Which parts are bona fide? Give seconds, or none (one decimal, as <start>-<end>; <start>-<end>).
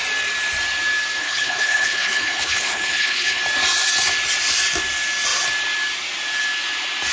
0.0-1.2; 3.4-7.1